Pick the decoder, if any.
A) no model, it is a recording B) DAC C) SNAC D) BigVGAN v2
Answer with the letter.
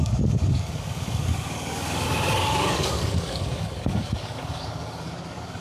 B